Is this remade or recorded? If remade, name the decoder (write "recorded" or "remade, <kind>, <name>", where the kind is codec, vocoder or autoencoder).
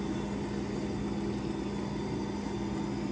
recorded